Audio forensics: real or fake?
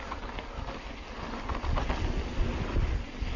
real